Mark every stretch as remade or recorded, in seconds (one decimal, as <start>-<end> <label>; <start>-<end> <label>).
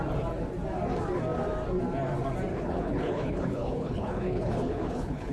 0.0-2.5 recorded; 2.5-5.3 remade